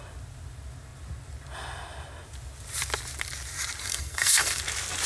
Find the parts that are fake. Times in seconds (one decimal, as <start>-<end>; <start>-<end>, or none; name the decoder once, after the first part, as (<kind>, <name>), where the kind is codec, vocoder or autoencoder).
3.8-4.6 (codec, SNAC)